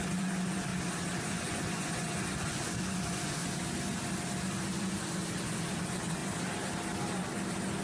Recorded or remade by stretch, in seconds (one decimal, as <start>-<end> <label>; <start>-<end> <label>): 0.0-0.7 remade; 0.7-1.2 recorded; 1.2-3.4 remade; 3.4-4.8 recorded; 4.8-6.2 remade; 6.2-7.8 recorded